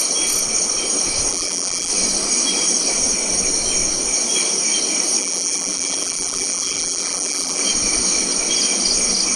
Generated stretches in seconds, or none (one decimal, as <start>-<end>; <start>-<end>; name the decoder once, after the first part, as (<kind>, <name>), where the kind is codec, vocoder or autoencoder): 1.3-1.9 (vocoder, BigVGAN v2); 5.2-7.6